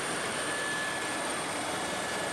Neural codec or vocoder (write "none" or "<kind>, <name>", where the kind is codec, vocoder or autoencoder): none